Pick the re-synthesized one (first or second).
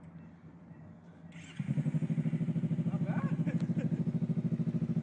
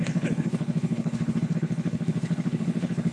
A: second